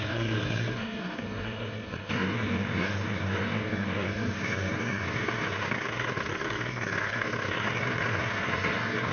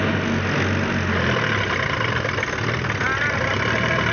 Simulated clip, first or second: first